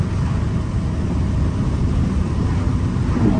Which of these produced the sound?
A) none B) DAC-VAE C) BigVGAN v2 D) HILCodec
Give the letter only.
A